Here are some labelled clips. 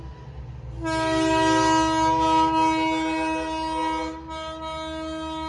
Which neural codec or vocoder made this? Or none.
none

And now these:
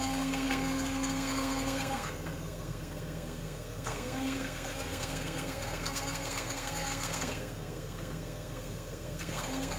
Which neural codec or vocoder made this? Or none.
codec, SNAC